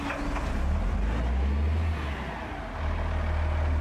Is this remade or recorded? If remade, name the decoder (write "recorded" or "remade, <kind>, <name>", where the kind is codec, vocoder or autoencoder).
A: recorded